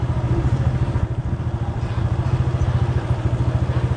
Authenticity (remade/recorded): recorded